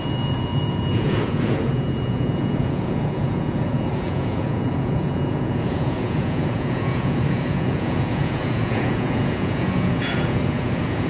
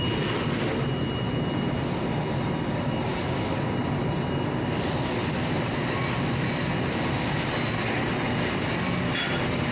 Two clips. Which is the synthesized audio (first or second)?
first